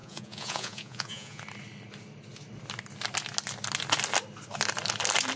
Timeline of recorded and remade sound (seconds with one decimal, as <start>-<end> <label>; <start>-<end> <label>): 0.0-1.4 remade; 1.4-5.4 recorded